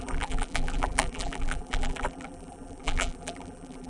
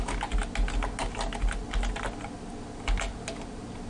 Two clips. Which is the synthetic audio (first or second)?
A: first